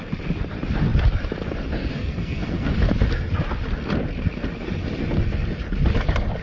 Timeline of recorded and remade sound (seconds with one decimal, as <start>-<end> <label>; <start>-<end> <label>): 0.0-1.9 recorded; 1.9-2.7 remade; 2.7-6.4 recorded